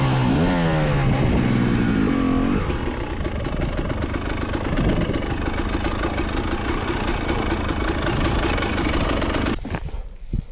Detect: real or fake real